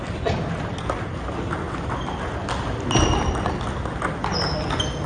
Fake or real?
real